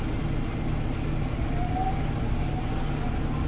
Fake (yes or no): no